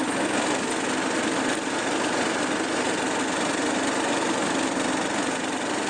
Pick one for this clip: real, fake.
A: real